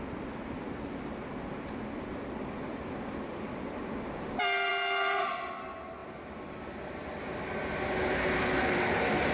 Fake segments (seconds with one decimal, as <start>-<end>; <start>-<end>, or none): none